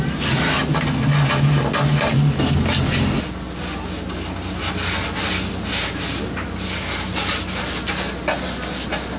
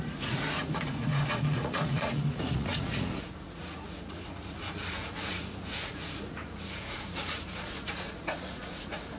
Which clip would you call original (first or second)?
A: first